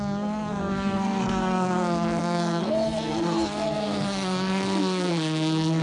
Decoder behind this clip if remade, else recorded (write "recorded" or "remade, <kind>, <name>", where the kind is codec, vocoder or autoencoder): remade, codec, SNAC